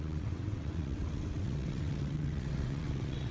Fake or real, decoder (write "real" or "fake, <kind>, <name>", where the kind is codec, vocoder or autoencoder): fake, vocoder, WaveNeXt